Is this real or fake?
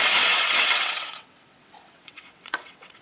fake